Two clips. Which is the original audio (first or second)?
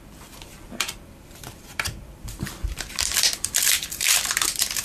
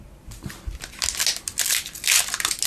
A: second